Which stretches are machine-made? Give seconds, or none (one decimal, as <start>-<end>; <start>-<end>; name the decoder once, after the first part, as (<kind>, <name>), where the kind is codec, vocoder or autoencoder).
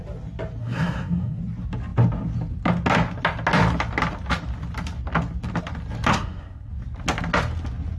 0.6-1.4 (codec, SNAC); 6.1-6.7